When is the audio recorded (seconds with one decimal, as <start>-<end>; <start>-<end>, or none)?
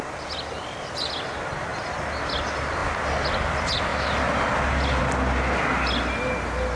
0.0-6.8